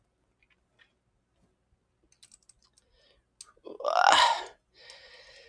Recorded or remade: recorded